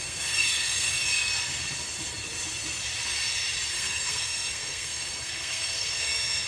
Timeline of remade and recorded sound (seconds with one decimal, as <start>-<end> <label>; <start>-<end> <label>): 0.0-1.3 remade; 1.3-3.7 recorded; 3.7-6.5 remade